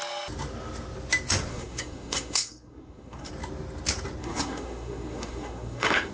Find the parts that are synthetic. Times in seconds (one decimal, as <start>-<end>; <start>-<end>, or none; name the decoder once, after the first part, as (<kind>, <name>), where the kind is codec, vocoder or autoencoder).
1.5-3.3 (codec, SNAC); 4.2-6.1